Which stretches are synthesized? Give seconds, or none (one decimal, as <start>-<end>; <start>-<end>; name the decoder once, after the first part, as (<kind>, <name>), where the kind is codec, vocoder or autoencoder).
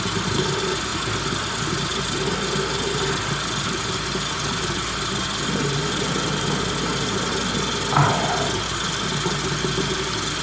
none